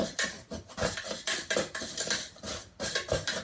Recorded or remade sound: recorded